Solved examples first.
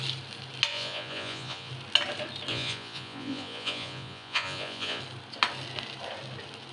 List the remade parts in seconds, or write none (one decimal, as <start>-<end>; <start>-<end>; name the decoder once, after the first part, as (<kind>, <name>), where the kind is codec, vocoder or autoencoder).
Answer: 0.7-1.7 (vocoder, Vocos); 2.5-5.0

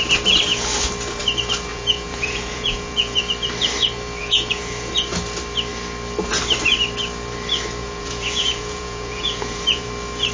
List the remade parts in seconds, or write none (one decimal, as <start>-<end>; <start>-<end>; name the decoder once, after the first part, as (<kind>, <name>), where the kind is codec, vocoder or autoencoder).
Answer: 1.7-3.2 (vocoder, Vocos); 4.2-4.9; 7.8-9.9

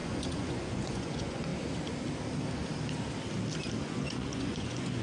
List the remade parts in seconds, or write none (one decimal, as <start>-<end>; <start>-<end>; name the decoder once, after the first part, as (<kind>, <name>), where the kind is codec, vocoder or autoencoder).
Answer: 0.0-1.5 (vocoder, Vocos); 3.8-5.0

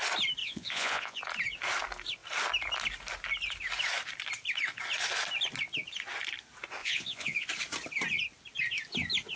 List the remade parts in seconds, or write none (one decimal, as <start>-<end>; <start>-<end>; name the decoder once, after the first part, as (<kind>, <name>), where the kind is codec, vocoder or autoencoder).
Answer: 0.4-1.2 (vocoder, Vocos); 6.8-7.5

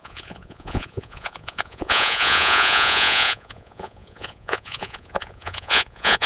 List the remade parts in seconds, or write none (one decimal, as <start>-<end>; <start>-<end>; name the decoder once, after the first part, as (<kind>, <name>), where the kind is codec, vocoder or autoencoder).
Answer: 0.0-6.3 (vocoder, Vocos)

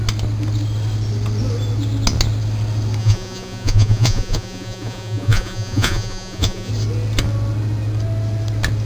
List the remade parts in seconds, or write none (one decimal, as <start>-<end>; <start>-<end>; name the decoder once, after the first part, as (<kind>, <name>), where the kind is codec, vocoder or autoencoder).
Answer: 3.0-6.7 (vocoder, Vocos)